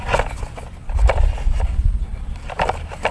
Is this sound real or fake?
real